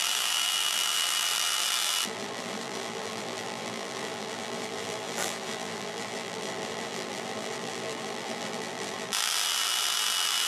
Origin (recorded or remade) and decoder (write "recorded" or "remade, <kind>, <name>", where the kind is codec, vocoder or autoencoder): remade, vocoder, BigVGAN v2